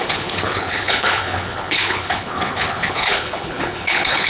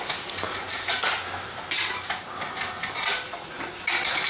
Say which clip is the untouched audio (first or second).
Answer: second